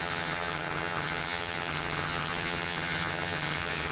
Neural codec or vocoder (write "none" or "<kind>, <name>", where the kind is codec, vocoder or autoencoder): vocoder, HiFi-GAN